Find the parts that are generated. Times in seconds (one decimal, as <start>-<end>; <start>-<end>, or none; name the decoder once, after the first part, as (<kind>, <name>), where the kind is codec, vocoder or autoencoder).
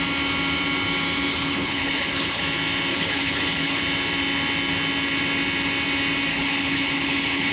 1.3-2.4 (codec, HILCodec); 2.9-3.8; 6.3-7.5